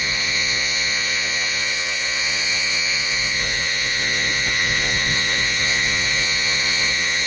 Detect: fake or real fake